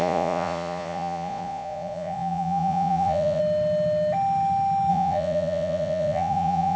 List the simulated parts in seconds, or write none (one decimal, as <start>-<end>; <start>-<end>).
0.0-3.4; 4.9-6.8